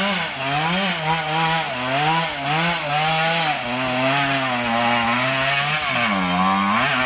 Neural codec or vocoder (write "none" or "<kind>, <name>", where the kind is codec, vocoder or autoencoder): none